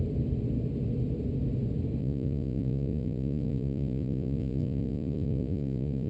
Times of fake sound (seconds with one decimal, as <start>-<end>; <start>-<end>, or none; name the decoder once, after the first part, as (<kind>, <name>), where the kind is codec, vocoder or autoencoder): 2.0-6.1 (vocoder, Vocos)